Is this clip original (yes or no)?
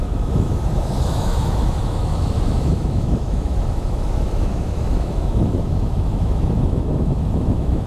no